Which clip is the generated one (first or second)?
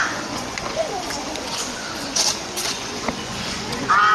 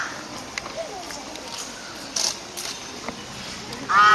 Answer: first